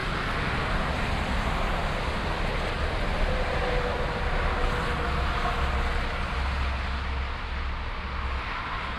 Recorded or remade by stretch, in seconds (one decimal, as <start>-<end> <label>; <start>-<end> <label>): 0.0-9.0 recorded